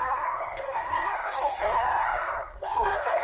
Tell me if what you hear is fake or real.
fake